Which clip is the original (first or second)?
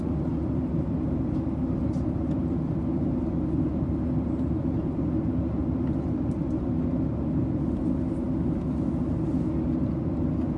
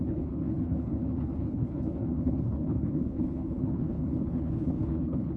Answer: first